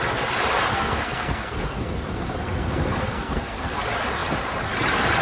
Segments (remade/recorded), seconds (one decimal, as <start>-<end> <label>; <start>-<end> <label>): 0.0-0.7 recorded; 0.7-3.8 remade; 3.8-5.2 recorded